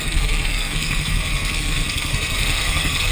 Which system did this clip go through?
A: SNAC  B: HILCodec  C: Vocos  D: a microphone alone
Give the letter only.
A